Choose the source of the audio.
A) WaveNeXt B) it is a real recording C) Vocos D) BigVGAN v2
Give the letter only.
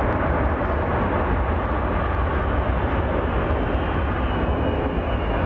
B